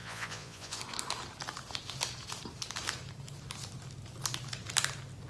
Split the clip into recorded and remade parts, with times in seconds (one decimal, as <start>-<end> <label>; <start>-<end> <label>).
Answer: 0.0-0.8 remade; 0.8-5.3 recorded